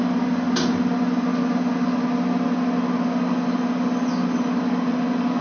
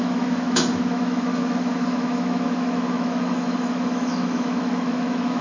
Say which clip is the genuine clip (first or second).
first